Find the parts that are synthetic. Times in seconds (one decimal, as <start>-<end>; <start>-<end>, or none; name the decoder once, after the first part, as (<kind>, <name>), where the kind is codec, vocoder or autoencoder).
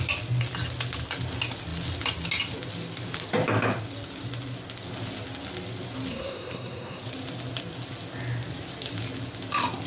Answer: 6.1-7.0 (codec, SNAC)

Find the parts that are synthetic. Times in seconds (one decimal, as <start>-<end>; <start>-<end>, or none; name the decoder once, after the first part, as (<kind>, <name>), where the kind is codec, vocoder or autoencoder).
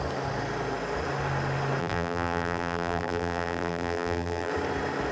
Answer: 1.8-4.5 (vocoder, BigVGAN v2)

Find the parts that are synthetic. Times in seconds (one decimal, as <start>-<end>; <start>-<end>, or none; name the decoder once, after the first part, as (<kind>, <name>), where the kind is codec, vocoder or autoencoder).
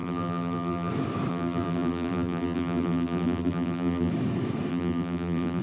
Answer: 0.0-0.9 (vocoder, BigVGAN v2); 1.3-4.1; 4.7-5.6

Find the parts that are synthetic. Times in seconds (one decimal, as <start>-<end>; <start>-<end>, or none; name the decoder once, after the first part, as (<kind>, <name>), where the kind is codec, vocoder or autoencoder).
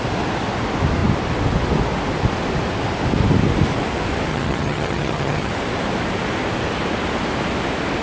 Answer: 4.3-5.5 (vocoder, HiFi-GAN)